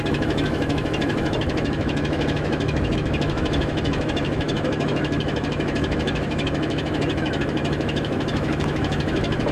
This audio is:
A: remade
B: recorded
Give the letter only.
A